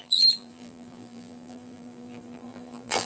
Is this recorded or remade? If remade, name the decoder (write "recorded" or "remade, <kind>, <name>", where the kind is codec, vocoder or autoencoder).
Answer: remade, vocoder, BigVGAN v2